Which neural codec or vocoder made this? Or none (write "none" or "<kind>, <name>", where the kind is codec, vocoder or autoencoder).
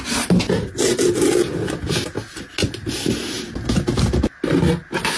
none